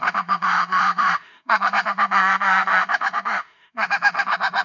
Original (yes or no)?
no